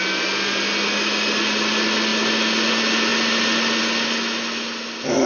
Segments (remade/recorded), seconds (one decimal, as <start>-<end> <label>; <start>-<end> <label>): 0.0-5.3 recorded